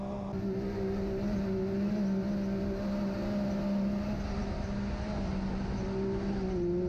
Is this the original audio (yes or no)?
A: yes